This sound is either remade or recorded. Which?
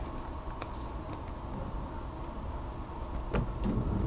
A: recorded